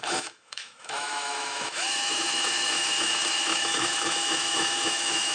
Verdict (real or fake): fake